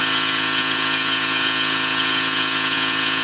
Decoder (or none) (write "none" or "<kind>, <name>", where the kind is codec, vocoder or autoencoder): vocoder, Vocos